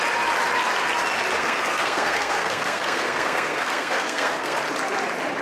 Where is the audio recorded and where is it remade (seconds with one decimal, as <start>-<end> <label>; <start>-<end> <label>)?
0.0-1.4 recorded; 1.4-4.6 remade; 4.6-5.4 recorded